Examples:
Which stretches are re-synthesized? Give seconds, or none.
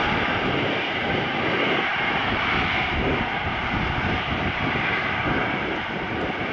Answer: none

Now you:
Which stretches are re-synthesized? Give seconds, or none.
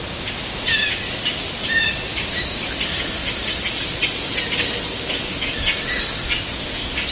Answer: none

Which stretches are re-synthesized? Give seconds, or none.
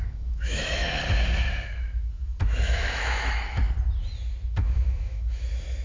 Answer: 0.0-3.6; 4.5-5.8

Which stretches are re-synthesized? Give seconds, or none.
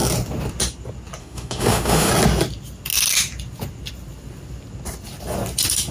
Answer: 1.2-2.1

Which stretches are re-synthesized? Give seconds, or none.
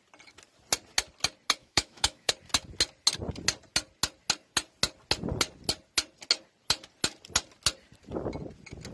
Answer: 1.6-2.3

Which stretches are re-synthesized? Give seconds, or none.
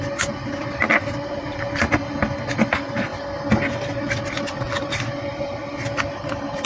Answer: none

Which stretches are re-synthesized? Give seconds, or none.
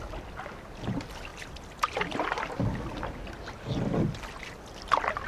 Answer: none